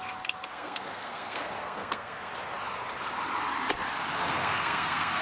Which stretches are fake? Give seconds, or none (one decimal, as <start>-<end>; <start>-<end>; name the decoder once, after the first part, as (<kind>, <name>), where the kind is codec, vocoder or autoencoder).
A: 0.5-2.3 (codec, SNAC); 4.3-5.2